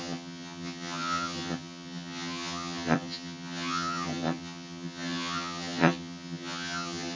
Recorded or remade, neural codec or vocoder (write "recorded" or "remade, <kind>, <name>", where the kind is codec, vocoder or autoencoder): remade, vocoder, HiFi-GAN